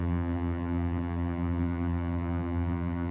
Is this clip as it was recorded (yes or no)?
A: no